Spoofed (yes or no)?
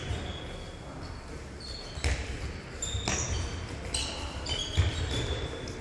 no